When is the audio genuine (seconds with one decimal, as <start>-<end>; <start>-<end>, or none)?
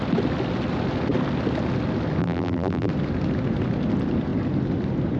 0.0-2.2; 2.9-5.2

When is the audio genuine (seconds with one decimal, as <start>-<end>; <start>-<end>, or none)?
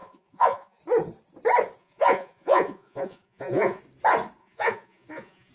0.8-1.8; 3.8-4.4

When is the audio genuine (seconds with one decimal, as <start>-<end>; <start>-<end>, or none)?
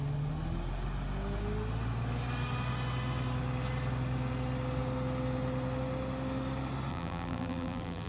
0.0-6.9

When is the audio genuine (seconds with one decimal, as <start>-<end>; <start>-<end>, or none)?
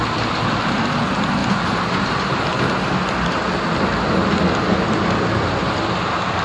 0.0-1.4; 2.1-6.4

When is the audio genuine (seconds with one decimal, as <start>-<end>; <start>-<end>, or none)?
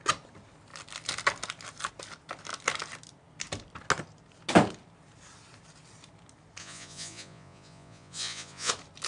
0.0-6.6; 8.7-9.1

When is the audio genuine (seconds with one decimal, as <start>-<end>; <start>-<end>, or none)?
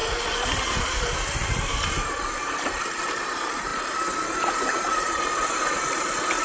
0.0-0.8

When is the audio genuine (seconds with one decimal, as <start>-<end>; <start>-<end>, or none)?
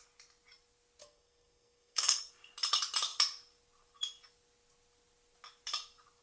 0.0-1.0; 2.3-6.2